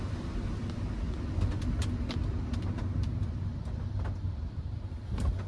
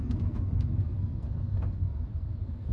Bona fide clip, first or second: first